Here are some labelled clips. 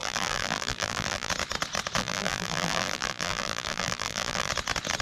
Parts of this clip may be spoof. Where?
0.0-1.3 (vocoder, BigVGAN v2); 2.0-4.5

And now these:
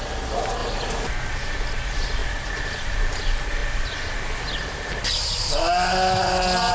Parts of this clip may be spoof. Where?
none

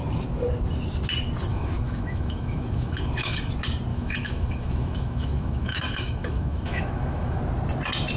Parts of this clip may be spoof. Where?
1.5-3.5 (autoencoder, DAC-VAE); 3.9-7.4

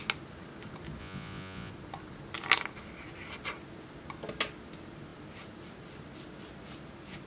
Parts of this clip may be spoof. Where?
1.0-1.7 (vocoder, Vocos)

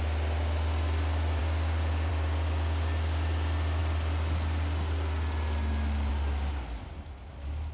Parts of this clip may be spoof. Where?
none